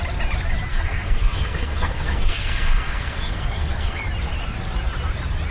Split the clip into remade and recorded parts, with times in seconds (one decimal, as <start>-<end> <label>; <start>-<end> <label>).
0.0-0.7 recorded; 0.7-4.0 remade; 4.0-5.5 recorded